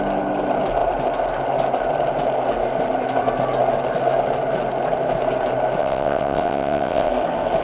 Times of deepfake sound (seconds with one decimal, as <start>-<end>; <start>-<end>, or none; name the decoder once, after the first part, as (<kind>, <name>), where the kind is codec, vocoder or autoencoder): 5.8-7.1 (vocoder, WaveNeXt)